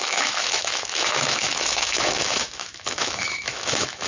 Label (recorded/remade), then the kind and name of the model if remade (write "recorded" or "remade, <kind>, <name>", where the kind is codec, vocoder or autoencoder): remade, autoencoder, DAC-VAE